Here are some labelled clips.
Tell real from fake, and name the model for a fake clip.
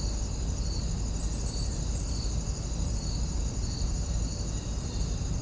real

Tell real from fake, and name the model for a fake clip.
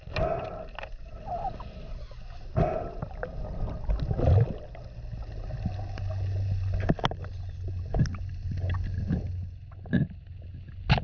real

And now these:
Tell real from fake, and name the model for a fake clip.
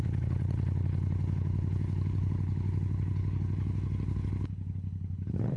fake, codec, HILCodec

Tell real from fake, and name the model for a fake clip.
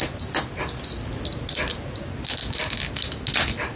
real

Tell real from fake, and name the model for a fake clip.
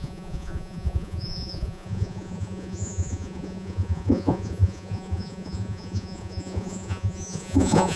fake, vocoder, Vocos